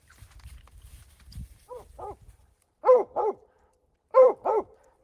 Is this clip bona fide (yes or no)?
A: no